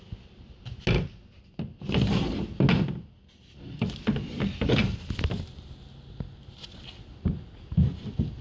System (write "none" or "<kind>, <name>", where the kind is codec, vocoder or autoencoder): none